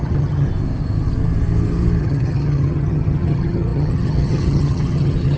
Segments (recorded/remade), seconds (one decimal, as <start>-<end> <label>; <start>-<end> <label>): 0.0-0.5 remade; 0.5-2.0 recorded; 2.0-5.4 remade